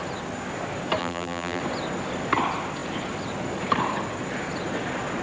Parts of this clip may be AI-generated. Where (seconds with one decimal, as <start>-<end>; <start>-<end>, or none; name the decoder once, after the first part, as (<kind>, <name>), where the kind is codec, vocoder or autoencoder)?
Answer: 1.0-1.6 (vocoder, BigVGAN v2)